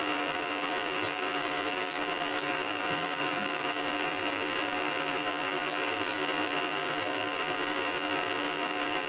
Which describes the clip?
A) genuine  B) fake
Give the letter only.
B